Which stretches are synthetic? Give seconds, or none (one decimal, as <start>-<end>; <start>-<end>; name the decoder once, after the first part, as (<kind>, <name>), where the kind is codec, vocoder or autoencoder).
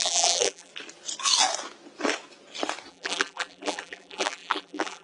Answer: 0.0-0.7 (vocoder, BigVGAN v2); 2.9-5.0